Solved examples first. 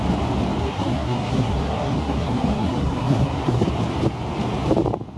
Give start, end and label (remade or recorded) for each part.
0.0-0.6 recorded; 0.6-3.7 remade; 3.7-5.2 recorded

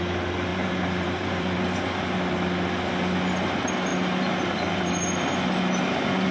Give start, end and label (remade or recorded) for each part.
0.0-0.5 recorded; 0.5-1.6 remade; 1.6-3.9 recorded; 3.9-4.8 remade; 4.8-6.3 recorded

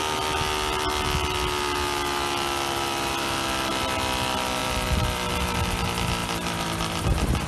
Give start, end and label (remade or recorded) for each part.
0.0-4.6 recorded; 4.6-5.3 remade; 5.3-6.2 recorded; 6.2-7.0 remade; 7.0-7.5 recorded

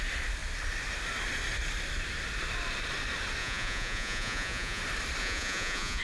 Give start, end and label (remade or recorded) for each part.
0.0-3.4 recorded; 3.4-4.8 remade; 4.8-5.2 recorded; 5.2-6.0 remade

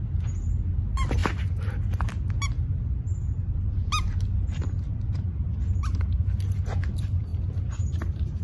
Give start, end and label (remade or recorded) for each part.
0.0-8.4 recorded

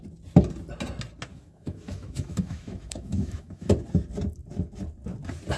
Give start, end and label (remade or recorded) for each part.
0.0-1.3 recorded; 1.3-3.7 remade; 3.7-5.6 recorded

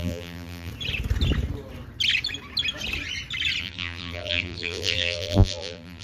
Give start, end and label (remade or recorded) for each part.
0.0-0.7 remade; 0.7-3.6 recorded; 3.6-6.0 remade

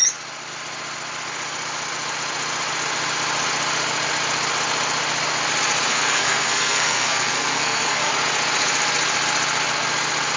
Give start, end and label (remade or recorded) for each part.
0.0-5.9 recorded; 5.9-8.1 remade; 8.1-10.4 recorded